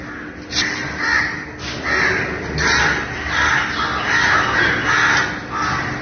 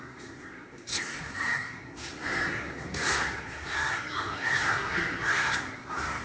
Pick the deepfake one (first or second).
second